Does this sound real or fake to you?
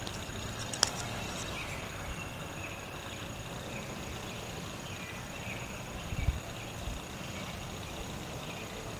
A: real